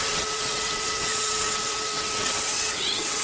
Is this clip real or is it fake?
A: fake